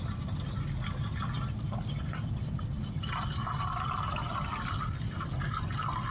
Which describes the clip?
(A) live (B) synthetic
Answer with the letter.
A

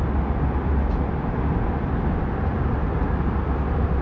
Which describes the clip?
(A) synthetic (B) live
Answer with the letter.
B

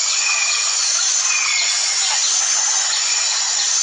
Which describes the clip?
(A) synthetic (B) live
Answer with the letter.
A